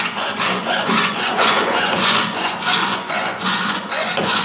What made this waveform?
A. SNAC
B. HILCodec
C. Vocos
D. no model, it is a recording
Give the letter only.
C